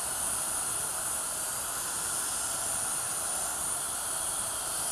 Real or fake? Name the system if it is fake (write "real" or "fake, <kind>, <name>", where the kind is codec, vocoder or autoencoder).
real